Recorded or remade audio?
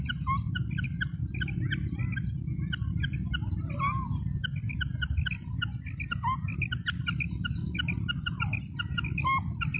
recorded